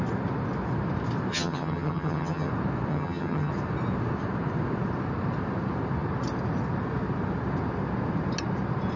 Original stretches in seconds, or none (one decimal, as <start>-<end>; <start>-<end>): 0.0-1.3; 2.5-2.9; 3.5-9.0